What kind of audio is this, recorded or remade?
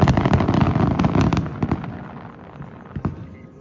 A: recorded